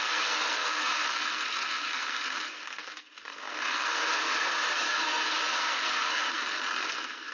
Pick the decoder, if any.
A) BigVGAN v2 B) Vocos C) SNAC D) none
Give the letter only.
C